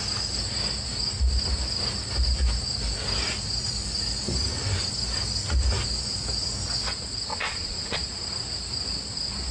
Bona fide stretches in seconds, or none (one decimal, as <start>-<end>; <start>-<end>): 0.0-7.3; 8.3-9.5